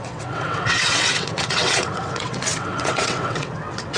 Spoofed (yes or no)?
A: yes